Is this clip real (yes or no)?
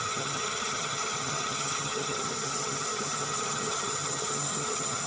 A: no